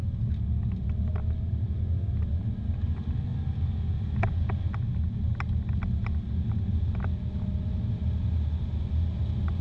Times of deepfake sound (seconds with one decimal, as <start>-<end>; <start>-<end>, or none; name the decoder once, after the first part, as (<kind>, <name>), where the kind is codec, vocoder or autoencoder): none